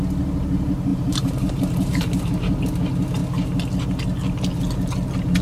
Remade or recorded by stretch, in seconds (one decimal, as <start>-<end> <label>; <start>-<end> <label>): 0.0-0.9 recorded; 0.9-2.6 remade; 2.6-5.4 recorded